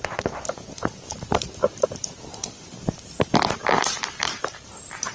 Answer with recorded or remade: remade